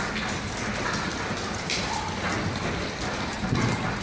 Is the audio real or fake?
real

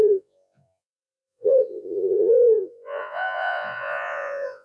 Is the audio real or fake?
fake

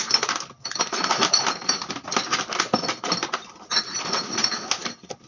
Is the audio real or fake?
real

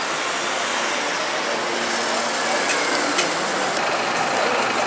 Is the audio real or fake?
real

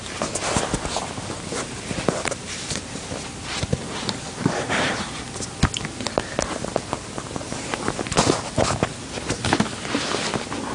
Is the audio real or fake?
real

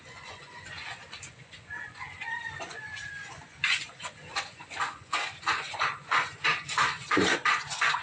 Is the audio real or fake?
fake